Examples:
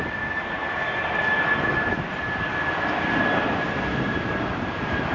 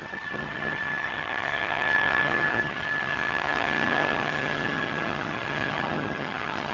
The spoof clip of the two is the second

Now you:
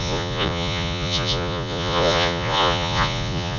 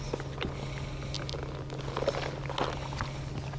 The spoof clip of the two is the first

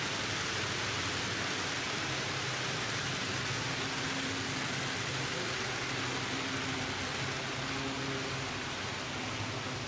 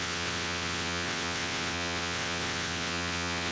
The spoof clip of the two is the second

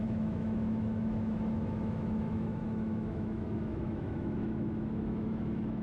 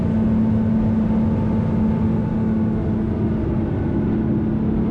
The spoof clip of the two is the first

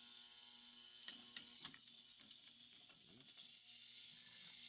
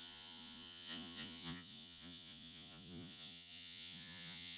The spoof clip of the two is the second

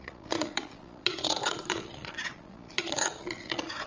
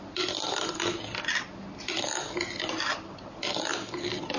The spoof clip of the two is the first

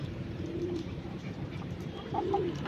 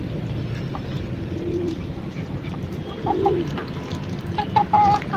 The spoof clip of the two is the first